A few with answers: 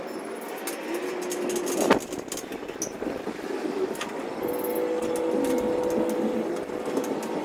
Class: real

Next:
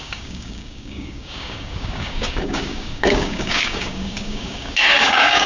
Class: fake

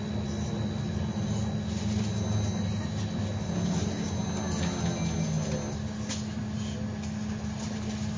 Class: real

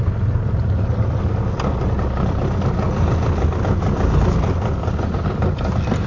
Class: real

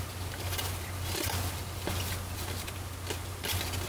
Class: real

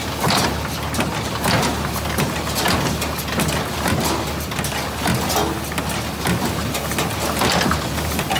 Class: real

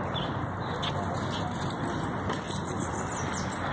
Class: real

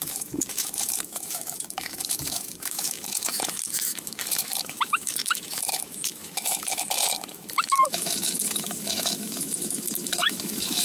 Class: fake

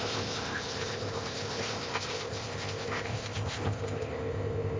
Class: fake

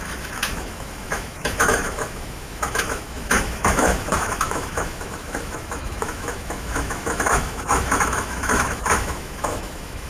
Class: fake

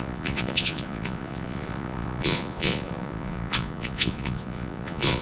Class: fake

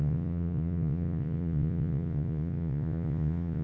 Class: fake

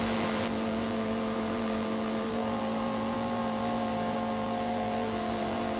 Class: fake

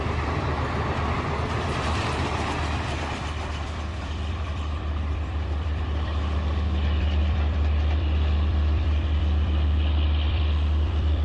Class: fake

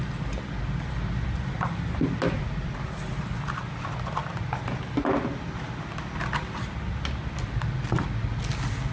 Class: real